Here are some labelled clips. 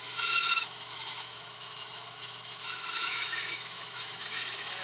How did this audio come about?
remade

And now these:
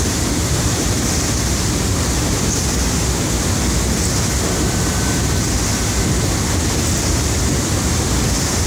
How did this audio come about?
recorded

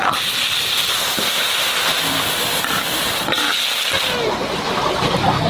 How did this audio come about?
recorded